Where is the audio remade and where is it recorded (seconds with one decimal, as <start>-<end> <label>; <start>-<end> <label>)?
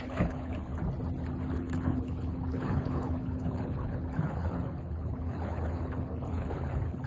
0.0-0.7 remade; 0.7-1.5 recorded; 1.5-7.1 remade